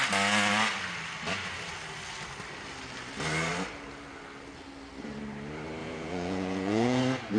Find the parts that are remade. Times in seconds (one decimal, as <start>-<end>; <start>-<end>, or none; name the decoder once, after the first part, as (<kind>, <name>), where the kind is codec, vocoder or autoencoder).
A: 5.8-7.0 (vocoder, Vocos)